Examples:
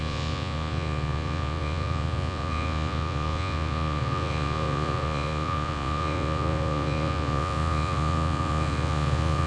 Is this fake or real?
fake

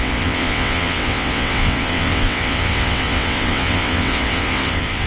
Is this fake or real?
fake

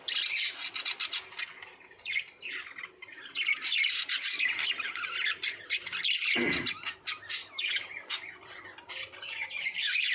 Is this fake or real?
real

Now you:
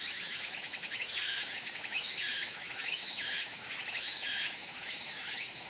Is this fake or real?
fake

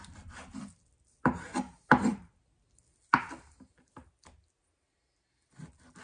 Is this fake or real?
real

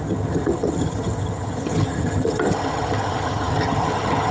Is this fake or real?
fake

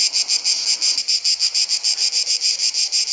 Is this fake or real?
real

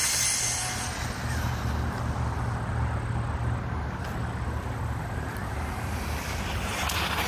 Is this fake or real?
real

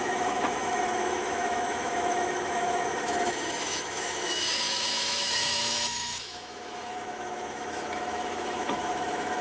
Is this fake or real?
fake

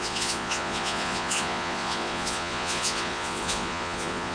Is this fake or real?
fake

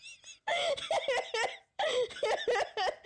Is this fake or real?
real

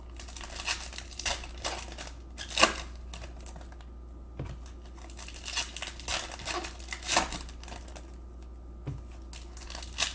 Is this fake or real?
real